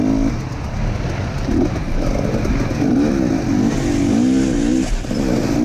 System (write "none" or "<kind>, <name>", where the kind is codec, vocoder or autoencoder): none